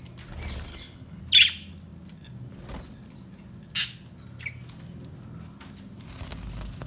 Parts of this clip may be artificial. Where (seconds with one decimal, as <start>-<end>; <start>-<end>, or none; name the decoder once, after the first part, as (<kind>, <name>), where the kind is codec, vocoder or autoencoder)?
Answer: 0.7-1.2 (codec, HILCodec)